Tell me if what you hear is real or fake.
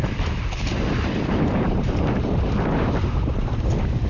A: fake